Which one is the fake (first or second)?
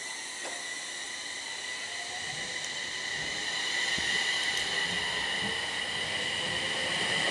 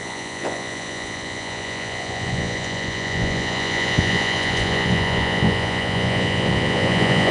second